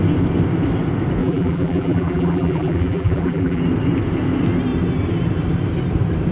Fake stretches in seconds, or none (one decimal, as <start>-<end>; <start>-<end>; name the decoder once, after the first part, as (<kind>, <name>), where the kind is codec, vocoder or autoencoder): 1.2-3.6 (vocoder, BigVGAN v2)